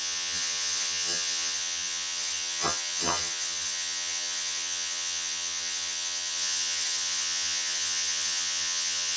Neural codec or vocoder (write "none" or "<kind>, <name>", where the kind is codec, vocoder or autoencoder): vocoder, HiFi-GAN